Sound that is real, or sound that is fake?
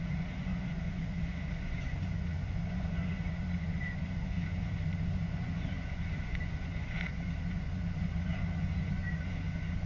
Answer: fake